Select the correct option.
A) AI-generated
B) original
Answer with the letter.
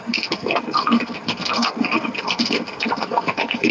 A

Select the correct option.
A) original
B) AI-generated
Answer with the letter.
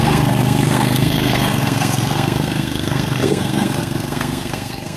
B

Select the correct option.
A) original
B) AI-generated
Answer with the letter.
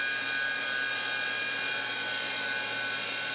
A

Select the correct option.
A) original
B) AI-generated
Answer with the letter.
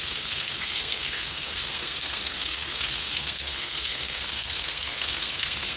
B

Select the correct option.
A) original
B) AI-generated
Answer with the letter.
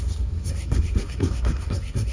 B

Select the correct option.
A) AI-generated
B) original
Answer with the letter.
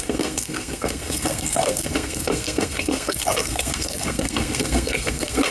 A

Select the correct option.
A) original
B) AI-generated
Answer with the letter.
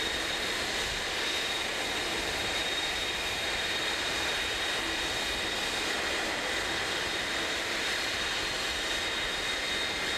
A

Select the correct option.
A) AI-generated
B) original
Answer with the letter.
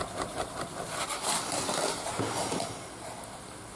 B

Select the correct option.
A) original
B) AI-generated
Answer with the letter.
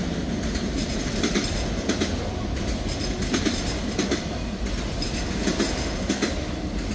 A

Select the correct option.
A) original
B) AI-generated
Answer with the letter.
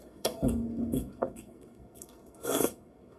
B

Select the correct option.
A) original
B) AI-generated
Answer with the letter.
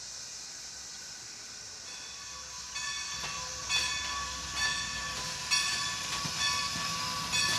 A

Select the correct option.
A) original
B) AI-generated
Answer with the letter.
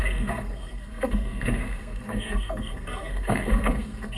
B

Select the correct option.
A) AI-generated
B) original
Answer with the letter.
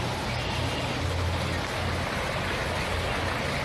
B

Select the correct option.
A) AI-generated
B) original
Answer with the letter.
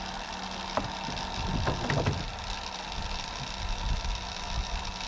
B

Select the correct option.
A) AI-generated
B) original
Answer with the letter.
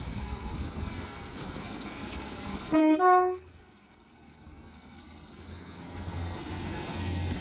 A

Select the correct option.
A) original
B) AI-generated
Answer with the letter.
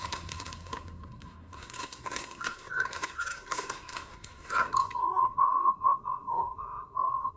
B